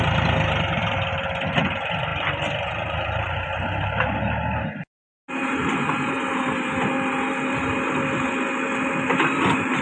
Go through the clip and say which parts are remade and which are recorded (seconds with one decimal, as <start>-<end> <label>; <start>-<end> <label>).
0.0-2.1 recorded; 2.1-4.2 remade; 4.2-5.6 recorded; 5.6-6.2 remade; 6.2-9.8 recorded